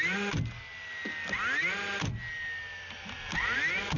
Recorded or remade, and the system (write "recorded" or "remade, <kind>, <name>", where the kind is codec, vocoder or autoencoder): recorded